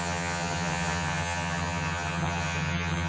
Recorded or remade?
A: remade